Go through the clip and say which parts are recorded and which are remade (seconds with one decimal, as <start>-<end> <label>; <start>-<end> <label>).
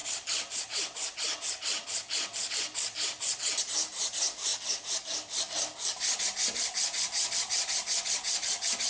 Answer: 0.0-8.9 recorded